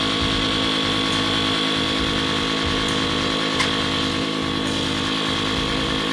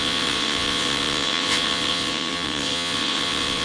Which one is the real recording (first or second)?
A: first